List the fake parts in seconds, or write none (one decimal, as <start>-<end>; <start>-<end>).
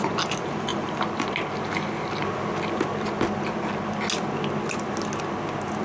0.7-1.3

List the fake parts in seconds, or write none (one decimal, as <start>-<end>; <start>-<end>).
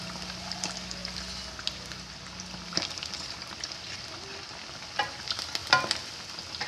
5.6-6.3